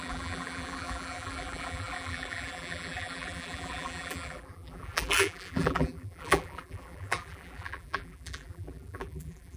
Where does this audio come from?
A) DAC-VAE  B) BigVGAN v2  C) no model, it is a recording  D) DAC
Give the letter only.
B